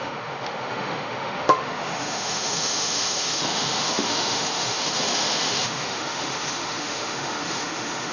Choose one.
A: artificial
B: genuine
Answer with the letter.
A